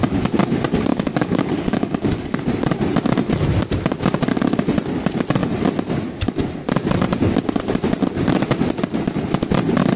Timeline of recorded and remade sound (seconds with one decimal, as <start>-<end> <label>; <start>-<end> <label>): 0.0-0.9 recorded; 0.9-2.4 remade; 2.4-10.0 recorded